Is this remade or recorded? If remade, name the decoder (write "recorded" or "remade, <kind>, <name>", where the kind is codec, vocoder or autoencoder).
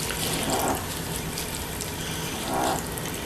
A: recorded